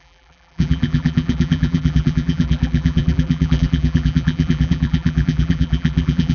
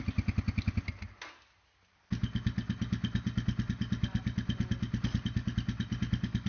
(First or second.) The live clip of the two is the second